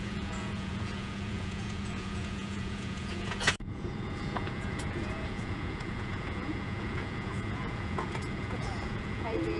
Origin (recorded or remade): remade